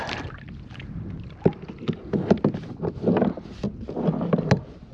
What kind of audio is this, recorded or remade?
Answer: recorded